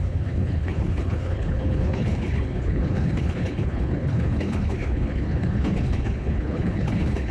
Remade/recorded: remade